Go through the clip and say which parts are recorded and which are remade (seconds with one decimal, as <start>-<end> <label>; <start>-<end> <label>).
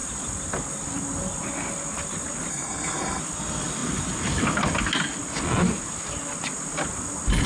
0.0-2.5 recorded; 2.5-3.2 remade; 3.2-7.5 recorded